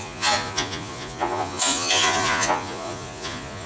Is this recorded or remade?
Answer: remade